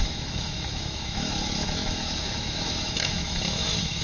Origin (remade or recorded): remade